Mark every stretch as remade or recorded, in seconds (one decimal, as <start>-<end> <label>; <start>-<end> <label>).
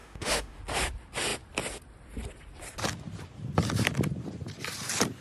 0.0-0.6 remade; 0.6-5.2 recorded